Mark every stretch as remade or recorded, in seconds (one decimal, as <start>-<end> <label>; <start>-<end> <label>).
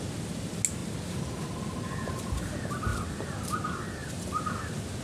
0.0-2.9 recorded; 2.9-3.5 remade; 3.5-4.0 recorded; 4.0-4.5 remade; 4.5-5.0 recorded